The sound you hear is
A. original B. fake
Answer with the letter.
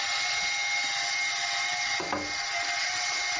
A